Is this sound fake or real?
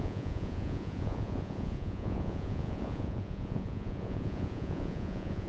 fake